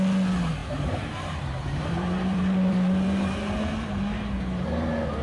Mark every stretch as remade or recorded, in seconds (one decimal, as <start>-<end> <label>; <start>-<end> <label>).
0.0-0.6 recorded; 0.6-3.5 remade; 3.5-5.2 recorded